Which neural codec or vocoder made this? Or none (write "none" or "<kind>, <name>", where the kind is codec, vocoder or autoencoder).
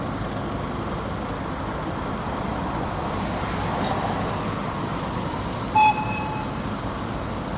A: none